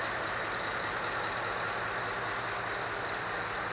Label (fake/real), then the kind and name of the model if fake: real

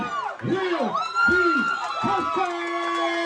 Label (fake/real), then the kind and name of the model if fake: real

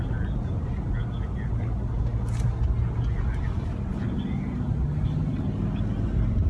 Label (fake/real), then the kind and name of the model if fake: real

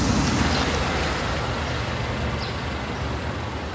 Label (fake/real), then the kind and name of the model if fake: real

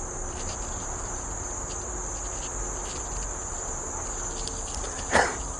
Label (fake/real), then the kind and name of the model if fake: real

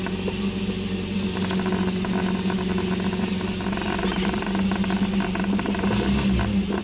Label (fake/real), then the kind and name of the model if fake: real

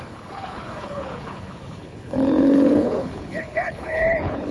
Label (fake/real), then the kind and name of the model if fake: fake, codec, HILCodec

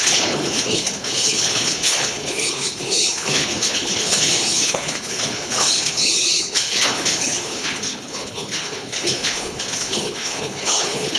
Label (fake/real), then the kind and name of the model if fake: fake, codec, HILCodec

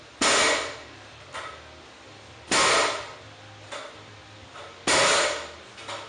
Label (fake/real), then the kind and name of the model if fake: real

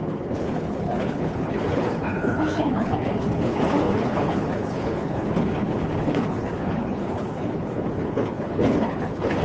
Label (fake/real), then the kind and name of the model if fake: fake, codec, HILCodec